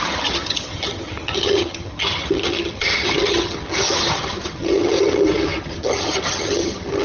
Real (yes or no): no